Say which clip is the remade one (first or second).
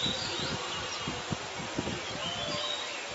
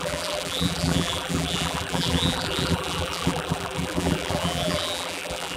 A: second